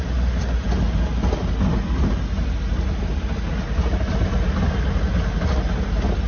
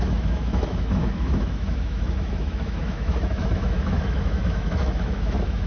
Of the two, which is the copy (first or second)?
second